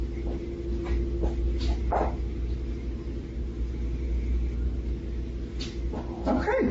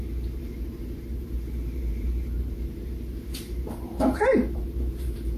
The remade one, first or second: second